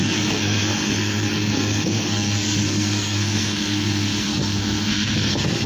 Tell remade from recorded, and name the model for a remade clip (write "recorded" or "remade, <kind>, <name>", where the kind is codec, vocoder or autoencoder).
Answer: remade, codec, SNAC